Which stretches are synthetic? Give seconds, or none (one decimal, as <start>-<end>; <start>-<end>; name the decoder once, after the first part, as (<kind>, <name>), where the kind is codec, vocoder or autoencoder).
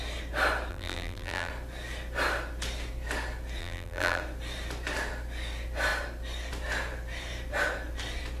0.7-1.5 (vocoder, BigVGAN v2); 3.6-4.2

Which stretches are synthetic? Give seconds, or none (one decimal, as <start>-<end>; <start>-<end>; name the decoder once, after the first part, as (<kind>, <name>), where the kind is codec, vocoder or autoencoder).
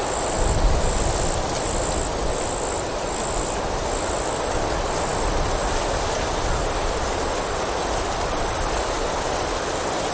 none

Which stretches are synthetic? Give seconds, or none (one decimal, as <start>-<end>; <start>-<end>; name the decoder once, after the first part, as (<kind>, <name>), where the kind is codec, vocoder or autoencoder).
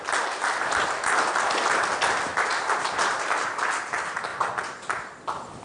none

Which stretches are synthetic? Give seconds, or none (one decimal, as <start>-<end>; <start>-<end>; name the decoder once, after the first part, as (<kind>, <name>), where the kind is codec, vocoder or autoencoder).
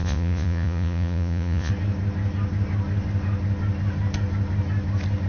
0.0-1.7 (vocoder, Vocos)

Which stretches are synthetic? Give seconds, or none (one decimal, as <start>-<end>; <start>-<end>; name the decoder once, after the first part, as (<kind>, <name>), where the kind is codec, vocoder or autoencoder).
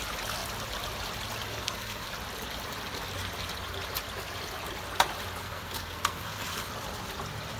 1.5-2.1 (codec, SNAC); 5.4-6.7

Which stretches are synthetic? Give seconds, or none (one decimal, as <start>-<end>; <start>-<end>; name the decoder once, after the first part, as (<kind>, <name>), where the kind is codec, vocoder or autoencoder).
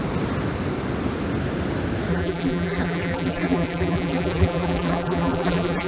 2.1-5.9 (vocoder, BigVGAN v2)